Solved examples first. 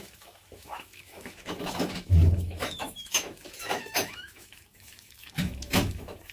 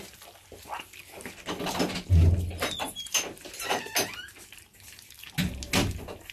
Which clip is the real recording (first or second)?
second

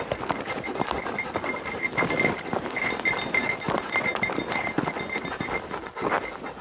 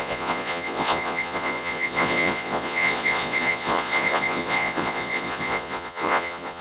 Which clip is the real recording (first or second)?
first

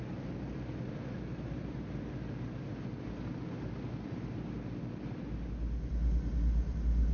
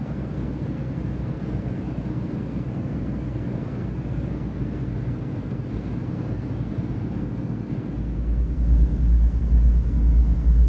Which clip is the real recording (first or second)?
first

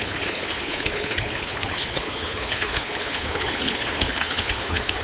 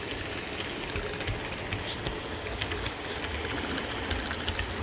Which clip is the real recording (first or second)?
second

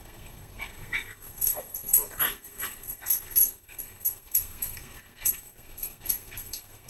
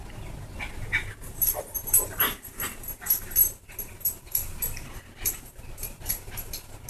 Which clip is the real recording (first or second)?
second